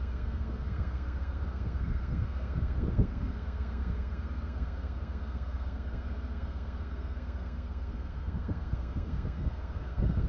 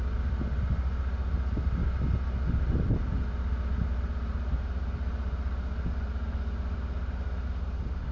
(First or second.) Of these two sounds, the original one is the second